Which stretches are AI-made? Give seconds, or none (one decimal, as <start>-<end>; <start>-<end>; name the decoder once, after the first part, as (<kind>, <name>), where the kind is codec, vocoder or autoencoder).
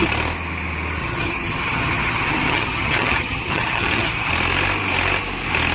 1.0-4.3 (vocoder, HiFi-GAN)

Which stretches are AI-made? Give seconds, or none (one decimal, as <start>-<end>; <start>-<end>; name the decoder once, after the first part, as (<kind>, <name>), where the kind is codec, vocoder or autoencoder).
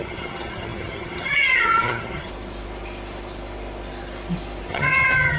0.0-2.3 (vocoder, HiFi-GAN); 4.7-5.4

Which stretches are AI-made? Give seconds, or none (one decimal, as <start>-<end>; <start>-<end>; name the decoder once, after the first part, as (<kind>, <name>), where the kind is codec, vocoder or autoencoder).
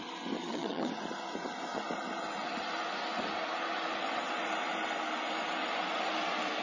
0.4-0.9 (vocoder, HiFi-GAN)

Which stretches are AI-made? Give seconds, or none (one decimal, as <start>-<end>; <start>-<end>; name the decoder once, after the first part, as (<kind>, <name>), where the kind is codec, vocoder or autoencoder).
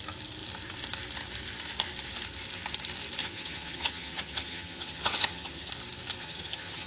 3.2-5.7 (vocoder, HiFi-GAN); 6.2-6.9